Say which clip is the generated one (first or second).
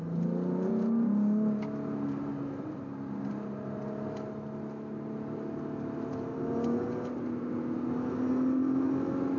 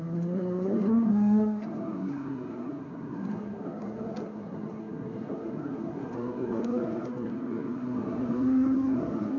second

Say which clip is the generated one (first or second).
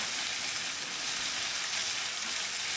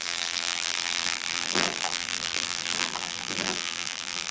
second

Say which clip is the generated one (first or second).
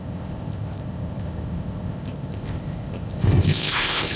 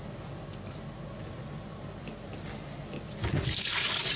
first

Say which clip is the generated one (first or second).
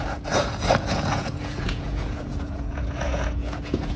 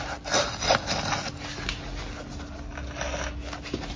first